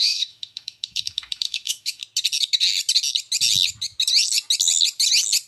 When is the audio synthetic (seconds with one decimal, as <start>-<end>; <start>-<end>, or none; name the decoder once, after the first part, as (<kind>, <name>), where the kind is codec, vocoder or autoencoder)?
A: 0.0-2.0 (autoencoder, DAC-VAE)